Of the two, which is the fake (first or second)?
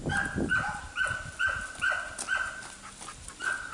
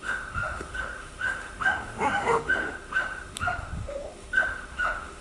second